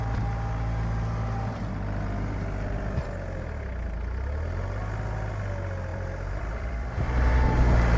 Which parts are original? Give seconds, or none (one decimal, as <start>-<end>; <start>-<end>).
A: 0.0-5.9; 7.3-8.0